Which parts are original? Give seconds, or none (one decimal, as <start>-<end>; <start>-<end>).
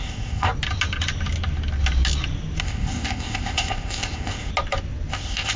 0.5-2.6; 4.5-5.1